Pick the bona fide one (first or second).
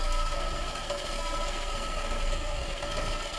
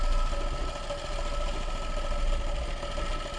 second